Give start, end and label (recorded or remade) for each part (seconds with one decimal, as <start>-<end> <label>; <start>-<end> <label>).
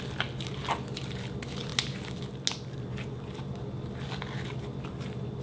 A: 0.0-5.4 recorded